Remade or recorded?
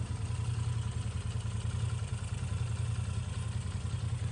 recorded